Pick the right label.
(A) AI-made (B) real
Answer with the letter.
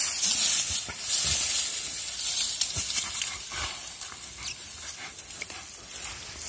B